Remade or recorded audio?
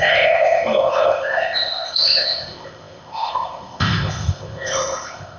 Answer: remade